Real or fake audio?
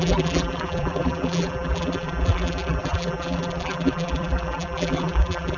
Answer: fake